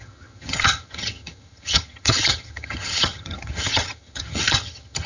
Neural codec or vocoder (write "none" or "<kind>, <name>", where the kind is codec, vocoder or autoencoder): vocoder, HiFi-GAN